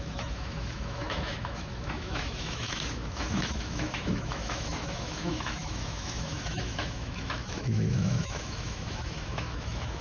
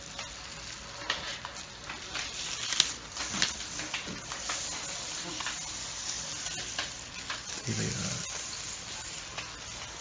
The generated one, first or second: first